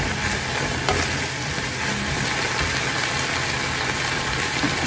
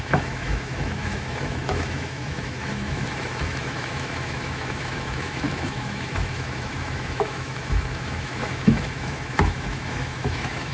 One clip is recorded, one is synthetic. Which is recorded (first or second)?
first